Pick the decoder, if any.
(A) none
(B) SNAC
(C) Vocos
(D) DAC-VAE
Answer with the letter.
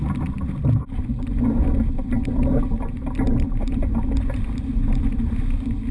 A